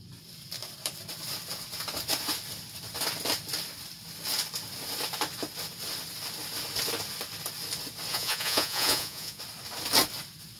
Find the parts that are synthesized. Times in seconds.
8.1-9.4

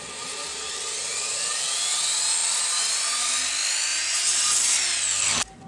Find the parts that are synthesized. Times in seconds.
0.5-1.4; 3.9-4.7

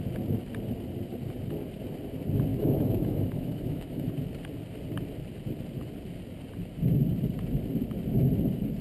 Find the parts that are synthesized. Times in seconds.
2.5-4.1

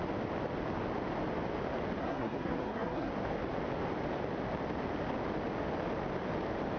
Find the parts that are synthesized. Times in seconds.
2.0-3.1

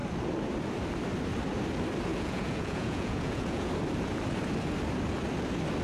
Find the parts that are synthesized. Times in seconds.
2.1-3.7

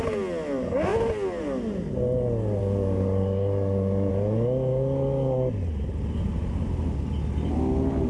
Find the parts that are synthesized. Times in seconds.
2.6-4.1; 4.7-5.5

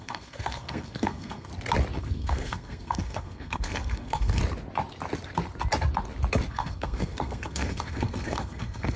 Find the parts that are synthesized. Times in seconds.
0.0-1.5; 2.0-4.4; 6.5-9.0